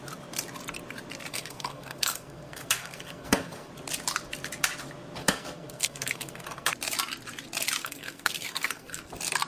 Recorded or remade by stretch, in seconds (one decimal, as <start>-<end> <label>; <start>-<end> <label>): 0.0-1.3 recorded; 1.3-3.7 remade; 3.7-5.2 recorded; 5.2-6.7 remade; 6.7-7.8 recorded; 7.8-9.1 remade; 9.1-9.5 recorded